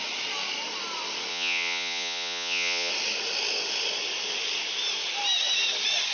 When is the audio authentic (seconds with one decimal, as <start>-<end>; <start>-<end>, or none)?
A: 0.0-1.3; 2.9-6.1